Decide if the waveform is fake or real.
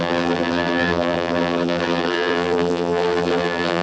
fake